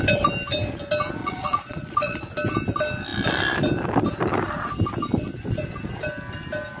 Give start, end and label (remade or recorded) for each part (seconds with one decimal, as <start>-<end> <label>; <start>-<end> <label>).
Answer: 0.0-1.2 recorded; 1.2-2.2 remade; 2.2-6.8 recorded